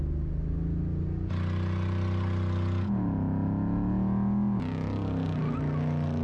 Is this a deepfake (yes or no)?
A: no